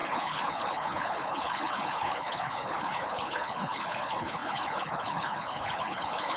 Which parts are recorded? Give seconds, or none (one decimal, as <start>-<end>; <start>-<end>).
none